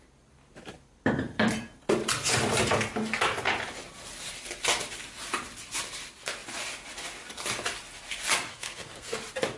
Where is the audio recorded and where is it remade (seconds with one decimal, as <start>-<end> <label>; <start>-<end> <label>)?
0.0-8.5 recorded; 8.5-9.2 remade; 9.2-9.6 recorded

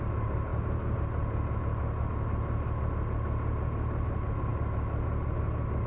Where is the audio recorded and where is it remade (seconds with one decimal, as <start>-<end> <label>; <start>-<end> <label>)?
0.0-5.9 recorded

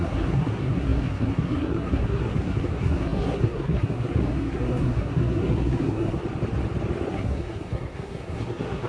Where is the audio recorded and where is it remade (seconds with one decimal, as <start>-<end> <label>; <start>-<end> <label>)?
0.0-6.2 remade; 6.2-7.1 recorded; 7.1-8.9 remade

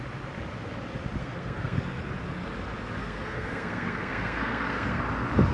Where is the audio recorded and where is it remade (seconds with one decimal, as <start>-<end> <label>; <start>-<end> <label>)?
0.0-1.2 recorded; 1.2-1.8 remade; 1.8-3.0 recorded; 3.0-5.0 remade; 5.0-5.5 recorded